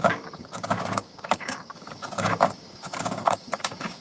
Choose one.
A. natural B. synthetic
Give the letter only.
B